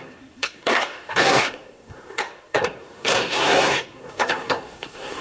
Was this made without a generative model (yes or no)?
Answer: no